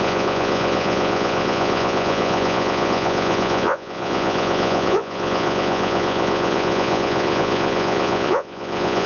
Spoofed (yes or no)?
yes